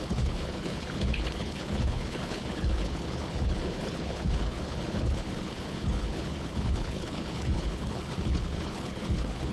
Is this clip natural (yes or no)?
no